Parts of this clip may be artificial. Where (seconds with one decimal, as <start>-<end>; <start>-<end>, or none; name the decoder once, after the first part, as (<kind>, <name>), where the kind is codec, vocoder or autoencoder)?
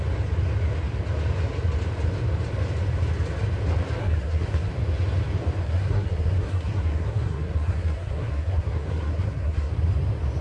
4.0-4.7 (codec, SNAC); 5.6-9.7